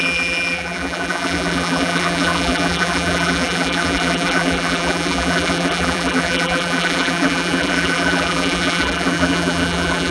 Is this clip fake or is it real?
fake